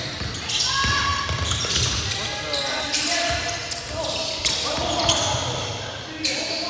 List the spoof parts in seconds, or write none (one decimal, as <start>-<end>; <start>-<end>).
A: none